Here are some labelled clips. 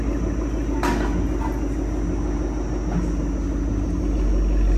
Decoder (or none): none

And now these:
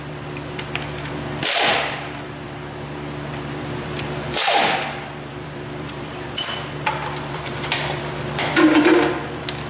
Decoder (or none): vocoder, BigVGAN v2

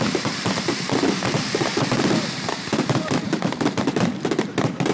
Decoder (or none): vocoder, BigVGAN v2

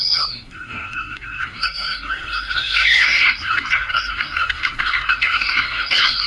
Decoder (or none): codec, SNAC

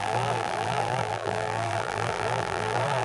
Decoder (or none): vocoder, BigVGAN v2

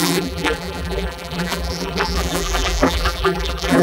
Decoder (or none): vocoder, BigVGAN v2